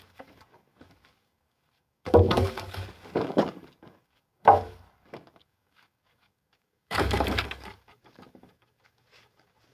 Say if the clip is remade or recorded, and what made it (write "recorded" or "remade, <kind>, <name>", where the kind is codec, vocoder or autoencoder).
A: remade, codec, DAC